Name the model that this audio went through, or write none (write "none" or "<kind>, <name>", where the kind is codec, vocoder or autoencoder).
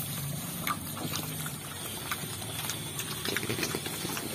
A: none